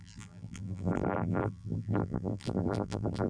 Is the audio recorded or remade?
remade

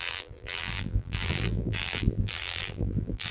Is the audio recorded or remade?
remade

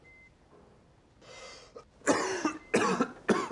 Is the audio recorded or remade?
recorded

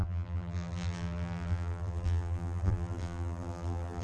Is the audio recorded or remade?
remade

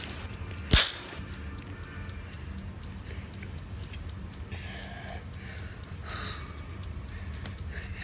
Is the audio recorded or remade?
recorded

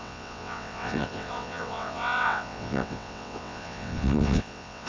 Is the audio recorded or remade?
remade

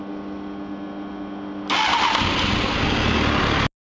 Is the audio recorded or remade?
recorded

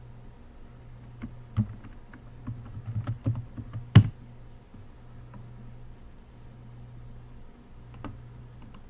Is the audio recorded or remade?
recorded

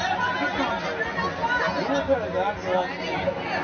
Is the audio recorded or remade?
recorded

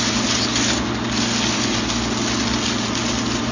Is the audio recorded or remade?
recorded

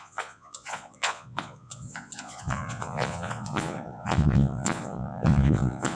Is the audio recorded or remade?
remade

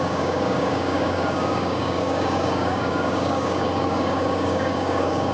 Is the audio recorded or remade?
remade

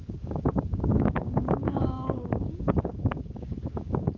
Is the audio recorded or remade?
remade